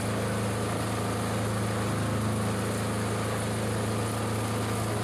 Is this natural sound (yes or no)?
yes